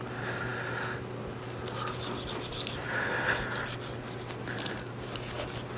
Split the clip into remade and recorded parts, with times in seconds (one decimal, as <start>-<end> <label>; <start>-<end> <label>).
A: 0.0-5.8 recorded